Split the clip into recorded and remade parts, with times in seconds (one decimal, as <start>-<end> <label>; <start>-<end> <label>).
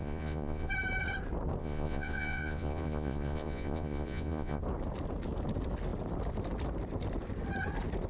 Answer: 0.0-0.7 remade; 0.7-1.6 recorded; 1.6-4.6 remade; 4.6-8.1 recorded